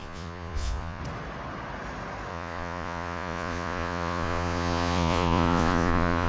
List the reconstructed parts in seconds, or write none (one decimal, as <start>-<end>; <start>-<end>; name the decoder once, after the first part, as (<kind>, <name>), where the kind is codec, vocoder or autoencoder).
0.0-1.0 (vocoder, Vocos); 2.3-6.3